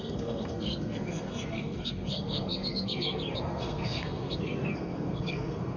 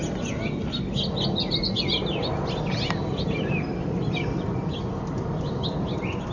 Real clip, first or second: second